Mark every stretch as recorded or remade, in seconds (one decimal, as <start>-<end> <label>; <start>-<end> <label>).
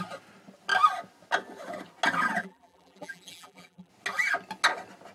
0.0-2.4 recorded; 2.4-3.9 remade; 3.9-5.1 recorded